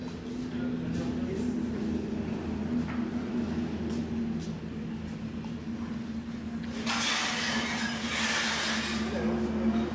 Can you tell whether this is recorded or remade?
recorded